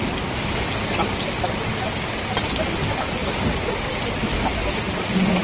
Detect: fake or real real